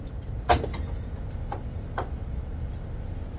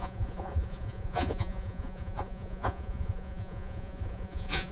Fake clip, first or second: second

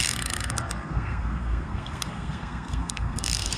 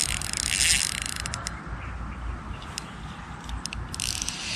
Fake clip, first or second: first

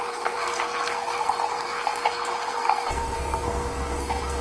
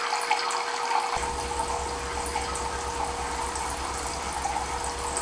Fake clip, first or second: first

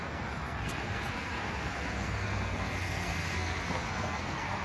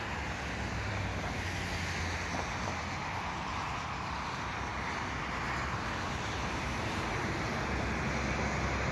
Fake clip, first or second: first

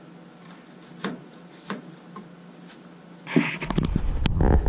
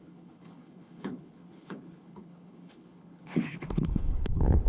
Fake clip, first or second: second